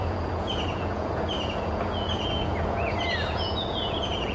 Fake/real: fake